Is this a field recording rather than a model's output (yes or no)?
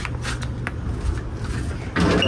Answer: yes